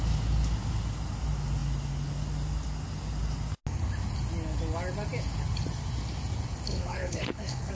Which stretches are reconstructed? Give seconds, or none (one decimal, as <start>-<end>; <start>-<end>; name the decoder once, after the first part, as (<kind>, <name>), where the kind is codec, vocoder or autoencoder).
6.7-7.7 (codec, HILCodec)